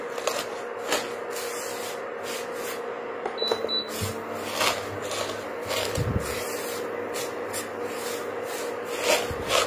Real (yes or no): yes